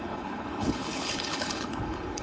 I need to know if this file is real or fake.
fake